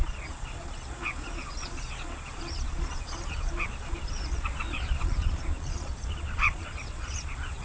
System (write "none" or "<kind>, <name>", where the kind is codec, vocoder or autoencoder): vocoder, Vocos